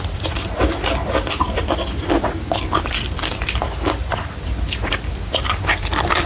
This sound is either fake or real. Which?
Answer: real